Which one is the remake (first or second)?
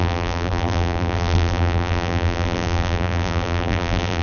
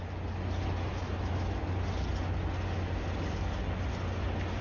first